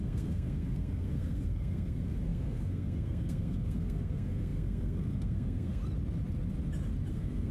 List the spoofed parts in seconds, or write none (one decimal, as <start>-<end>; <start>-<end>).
0.0-5.8; 7.1-7.5